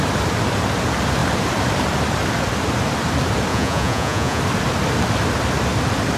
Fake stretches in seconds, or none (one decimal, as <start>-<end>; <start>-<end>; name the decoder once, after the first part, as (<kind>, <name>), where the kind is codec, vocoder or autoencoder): 3.5-4.4 (vocoder, Vocos)